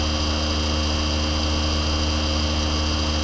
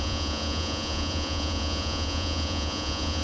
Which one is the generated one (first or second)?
second